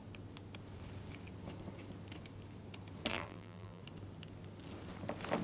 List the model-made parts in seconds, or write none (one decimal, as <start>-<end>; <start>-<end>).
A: 3.1-3.8